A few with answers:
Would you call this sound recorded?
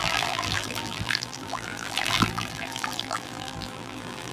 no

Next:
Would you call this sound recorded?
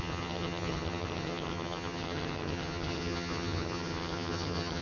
no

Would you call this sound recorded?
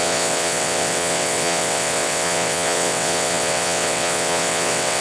no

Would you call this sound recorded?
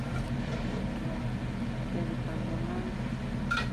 yes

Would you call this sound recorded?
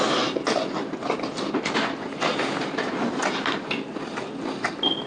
yes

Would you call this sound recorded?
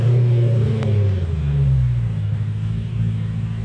no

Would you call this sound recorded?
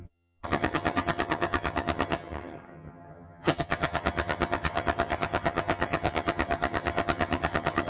no